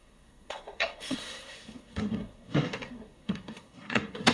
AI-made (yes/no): yes